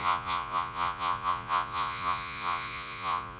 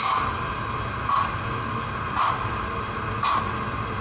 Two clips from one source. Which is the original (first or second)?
second